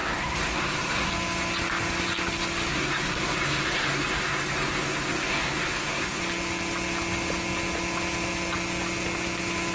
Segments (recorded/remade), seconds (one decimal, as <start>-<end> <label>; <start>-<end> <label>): 0.0-1.1 remade; 1.1-2.7 recorded; 2.7-6.2 remade; 6.2-9.7 recorded